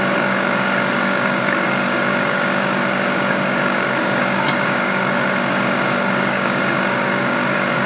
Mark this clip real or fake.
fake